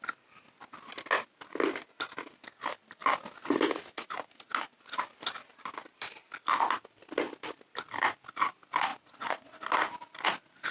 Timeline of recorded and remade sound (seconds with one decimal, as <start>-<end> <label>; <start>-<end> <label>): 0.0-8.9 recorded; 8.9-9.6 remade; 9.6-10.7 recorded